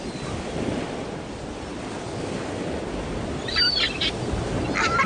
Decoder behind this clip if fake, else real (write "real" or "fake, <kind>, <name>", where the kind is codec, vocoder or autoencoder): real